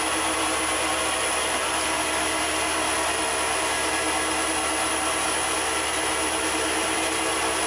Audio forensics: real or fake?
real